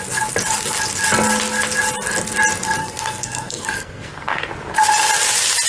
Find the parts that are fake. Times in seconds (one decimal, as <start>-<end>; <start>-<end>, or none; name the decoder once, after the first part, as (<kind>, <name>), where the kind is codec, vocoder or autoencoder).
2.8-4.5 (codec, SNAC)